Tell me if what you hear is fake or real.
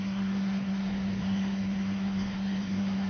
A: fake